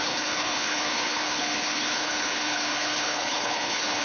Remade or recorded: remade